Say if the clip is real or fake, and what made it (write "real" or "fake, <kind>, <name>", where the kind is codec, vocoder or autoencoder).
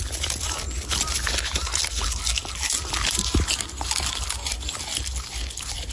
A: real